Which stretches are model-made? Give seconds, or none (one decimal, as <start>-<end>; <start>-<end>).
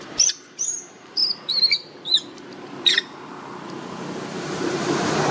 0.0-1.2; 4.4-5.3